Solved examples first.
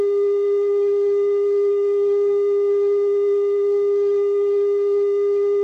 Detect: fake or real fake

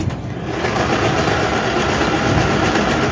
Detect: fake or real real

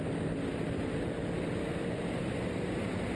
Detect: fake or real real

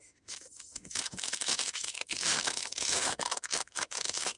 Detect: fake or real fake